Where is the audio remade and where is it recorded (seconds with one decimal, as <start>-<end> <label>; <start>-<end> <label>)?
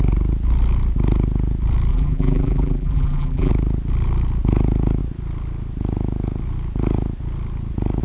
0.0-1.9 recorded; 1.9-3.5 remade; 3.5-8.0 recorded